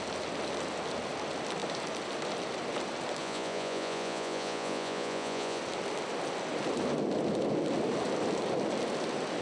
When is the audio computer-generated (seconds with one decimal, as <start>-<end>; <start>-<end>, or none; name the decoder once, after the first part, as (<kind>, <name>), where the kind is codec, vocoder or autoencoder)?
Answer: 3.2-5.6 (vocoder, Vocos)